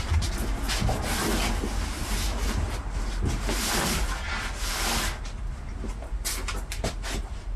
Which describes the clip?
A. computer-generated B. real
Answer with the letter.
B